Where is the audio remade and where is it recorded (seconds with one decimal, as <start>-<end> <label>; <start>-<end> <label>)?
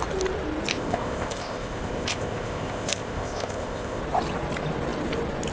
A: 0.0-0.7 recorded; 0.7-4.0 remade; 4.0-5.5 recorded